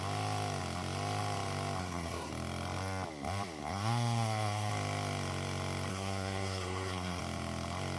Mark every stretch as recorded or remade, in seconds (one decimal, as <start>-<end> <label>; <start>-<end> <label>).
0.0-1.8 recorded; 1.8-2.3 remade; 2.3-3.6 recorded; 3.6-4.7 remade; 4.7-5.9 recorded; 5.9-7.2 remade; 7.2-8.0 recorded